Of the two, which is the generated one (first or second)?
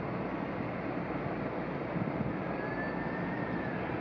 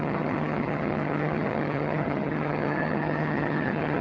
second